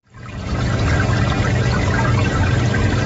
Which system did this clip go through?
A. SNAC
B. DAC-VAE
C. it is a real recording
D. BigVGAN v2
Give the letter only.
C